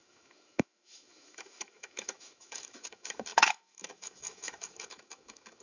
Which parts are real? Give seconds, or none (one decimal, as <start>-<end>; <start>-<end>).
none